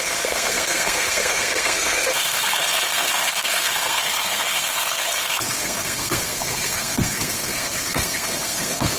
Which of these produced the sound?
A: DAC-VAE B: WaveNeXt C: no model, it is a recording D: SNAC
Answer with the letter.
D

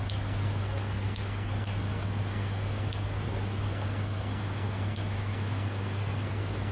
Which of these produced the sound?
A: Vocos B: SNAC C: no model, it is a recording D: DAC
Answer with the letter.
B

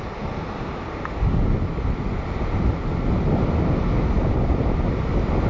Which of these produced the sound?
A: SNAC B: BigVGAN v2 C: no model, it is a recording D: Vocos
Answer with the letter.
C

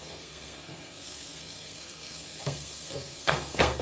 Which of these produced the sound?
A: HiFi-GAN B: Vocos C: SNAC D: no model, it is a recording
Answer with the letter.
C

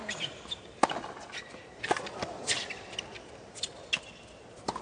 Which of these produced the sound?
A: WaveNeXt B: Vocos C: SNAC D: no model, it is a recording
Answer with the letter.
D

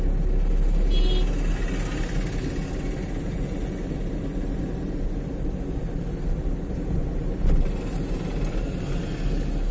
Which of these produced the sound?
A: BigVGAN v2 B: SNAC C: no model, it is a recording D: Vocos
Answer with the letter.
C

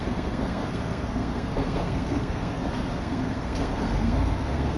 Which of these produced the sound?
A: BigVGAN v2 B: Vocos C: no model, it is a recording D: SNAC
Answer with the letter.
D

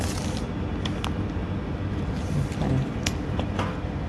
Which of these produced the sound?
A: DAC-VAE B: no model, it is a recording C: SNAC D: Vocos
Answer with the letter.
B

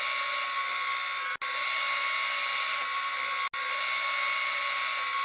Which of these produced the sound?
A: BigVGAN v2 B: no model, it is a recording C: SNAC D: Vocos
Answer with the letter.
B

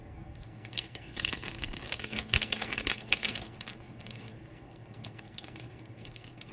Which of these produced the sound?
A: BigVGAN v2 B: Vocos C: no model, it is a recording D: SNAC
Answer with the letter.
D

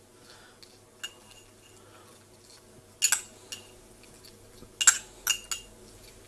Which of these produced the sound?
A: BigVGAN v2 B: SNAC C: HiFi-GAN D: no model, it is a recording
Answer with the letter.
D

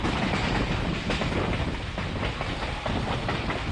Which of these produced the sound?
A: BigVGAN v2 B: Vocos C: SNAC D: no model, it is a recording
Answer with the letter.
D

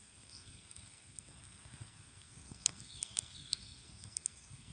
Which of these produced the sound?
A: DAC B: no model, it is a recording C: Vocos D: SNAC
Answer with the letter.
D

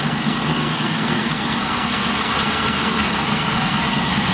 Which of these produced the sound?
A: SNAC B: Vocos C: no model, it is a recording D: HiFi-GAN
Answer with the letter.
A